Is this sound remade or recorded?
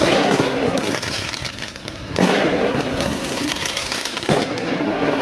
remade